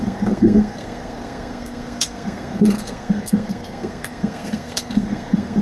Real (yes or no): no